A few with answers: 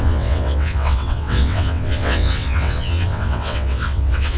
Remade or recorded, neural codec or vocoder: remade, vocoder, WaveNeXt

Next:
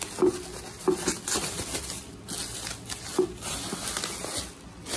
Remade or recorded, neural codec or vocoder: recorded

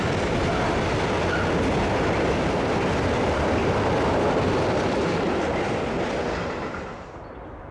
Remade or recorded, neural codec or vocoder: recorded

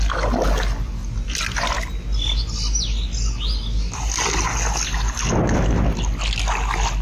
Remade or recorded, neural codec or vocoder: recorded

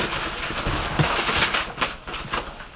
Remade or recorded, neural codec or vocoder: recorded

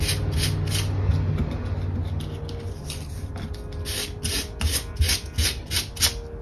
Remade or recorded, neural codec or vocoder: recorded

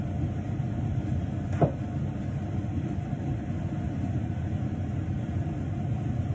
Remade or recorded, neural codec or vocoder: recorded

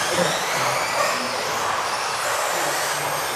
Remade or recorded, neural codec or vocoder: recorded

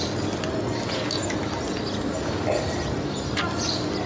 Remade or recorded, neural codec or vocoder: recorded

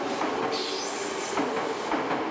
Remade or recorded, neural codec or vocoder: recorded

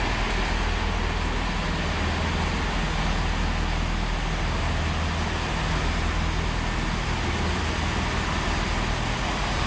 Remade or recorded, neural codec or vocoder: recorded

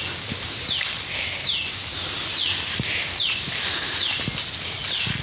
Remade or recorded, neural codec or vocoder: recorded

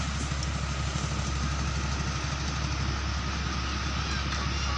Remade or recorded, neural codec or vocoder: recorded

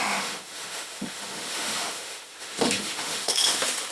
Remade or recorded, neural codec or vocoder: remade, autoencoder, DAC-VAE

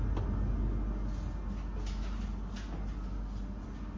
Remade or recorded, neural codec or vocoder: recorded